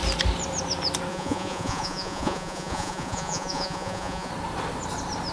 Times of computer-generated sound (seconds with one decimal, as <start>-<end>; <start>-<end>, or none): 1.1-4.3